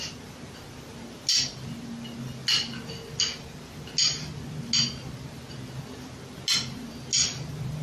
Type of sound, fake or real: real